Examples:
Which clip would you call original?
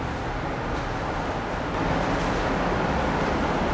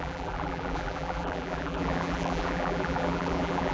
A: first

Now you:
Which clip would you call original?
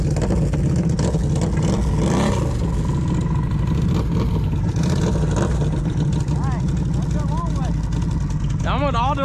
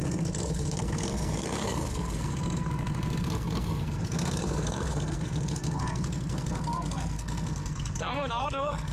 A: first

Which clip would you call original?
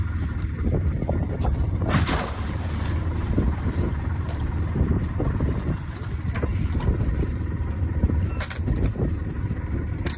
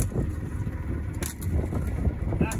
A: second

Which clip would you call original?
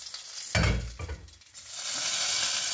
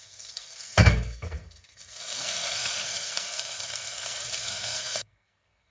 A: first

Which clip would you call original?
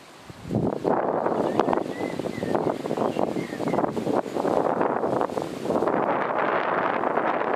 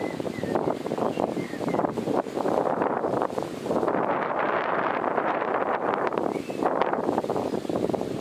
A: first